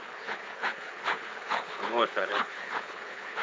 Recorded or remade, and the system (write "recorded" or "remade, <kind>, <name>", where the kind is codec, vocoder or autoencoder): remade, codec, HILCodec